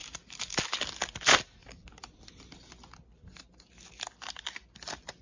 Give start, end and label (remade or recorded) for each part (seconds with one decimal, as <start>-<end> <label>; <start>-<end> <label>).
0.0-1.2 recorded; 1.2-1.6 remade; 1.6-4.3 recorded; 4.3-5.2 remade